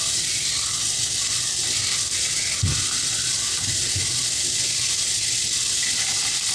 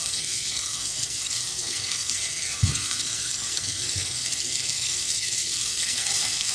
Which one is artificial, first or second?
second